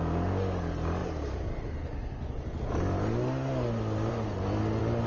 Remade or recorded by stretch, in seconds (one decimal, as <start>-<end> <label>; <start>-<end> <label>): 0.0-5.1 recorded